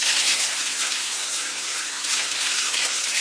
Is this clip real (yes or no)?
no